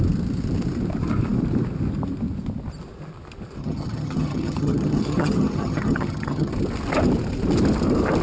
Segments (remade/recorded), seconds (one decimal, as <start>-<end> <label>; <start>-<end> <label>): 0.0-3.6 recorded; 3.6-6.5 remade; 6.5-8.2 recorded